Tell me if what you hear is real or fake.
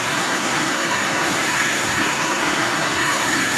fake